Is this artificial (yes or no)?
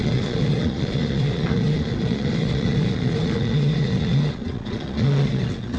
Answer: yes